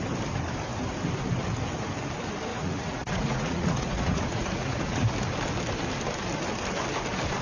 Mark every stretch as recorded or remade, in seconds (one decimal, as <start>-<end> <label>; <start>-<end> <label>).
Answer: 0.0-2.5 recorded; 2.5-5.1 remade; 5.1-7.4 recorded